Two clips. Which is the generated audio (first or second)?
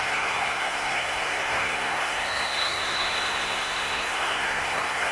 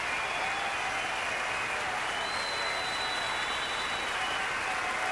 first